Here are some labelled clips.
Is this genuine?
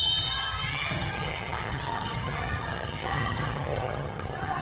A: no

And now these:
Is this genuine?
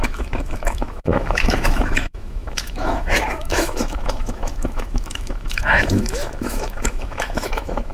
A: no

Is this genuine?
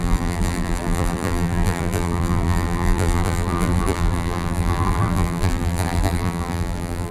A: no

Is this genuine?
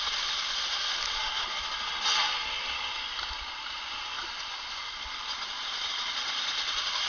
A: yes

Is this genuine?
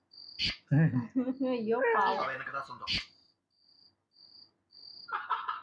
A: yes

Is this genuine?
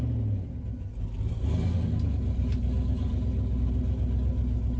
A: yes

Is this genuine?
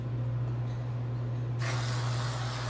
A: yes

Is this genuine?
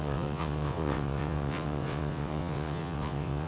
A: no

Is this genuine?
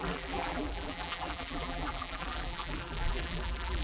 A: no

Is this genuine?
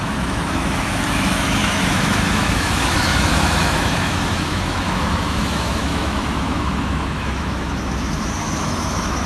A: no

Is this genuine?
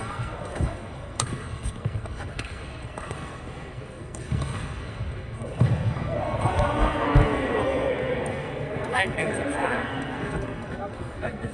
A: no